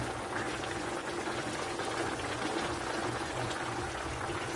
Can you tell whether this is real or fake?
fake